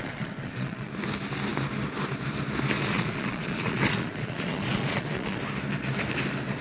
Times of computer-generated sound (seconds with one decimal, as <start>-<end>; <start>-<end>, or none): 0.0-0.9; 2.8-5.4

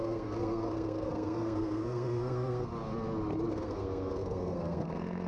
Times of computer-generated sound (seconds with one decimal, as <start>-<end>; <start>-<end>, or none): 0.0-2.7; 3.5-5.3